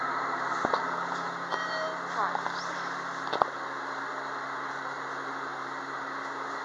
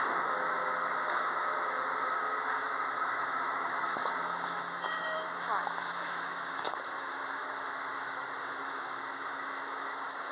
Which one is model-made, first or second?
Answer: second